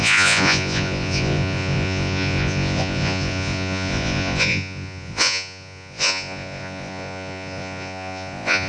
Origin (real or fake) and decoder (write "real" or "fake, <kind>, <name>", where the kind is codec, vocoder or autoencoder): fake, vocoder, Vocos